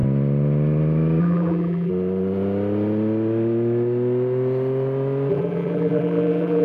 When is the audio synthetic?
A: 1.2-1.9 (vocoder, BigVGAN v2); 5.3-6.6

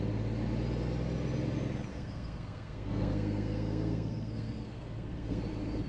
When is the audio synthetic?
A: 1.9-5.4 (codec, SNAC)